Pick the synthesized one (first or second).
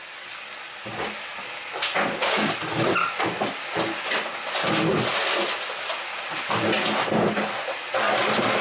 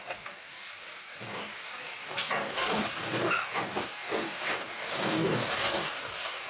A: second